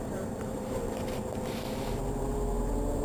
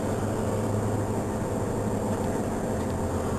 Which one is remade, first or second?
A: first